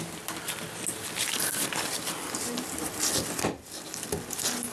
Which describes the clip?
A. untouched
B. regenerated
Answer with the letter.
A